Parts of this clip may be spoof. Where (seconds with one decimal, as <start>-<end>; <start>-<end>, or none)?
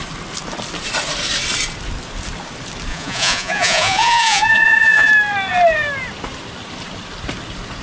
2.9-5.1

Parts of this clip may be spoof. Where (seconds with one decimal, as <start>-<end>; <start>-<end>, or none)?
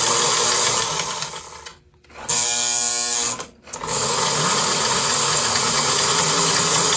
3.9-7.0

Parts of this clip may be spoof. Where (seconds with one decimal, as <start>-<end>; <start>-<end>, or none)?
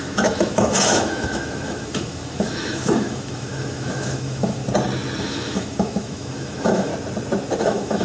0.0-4.6; 5.2-6.9; 7.6-8.0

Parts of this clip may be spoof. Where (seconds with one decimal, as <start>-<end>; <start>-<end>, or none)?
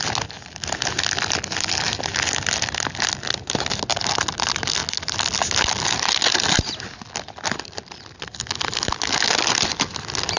none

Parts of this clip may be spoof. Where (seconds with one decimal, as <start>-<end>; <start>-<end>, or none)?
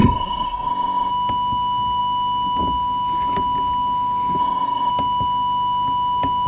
0.0-1.1; 4.4-4.9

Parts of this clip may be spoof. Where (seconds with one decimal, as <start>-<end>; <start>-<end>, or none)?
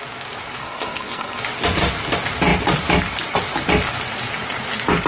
0.6-1.4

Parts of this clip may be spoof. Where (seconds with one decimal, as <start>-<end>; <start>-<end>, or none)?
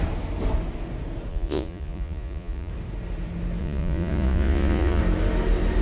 1.3-2.7; 3.6-5.0